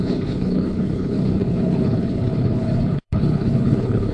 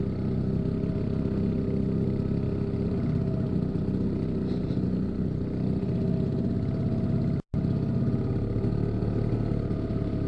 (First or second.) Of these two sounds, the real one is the second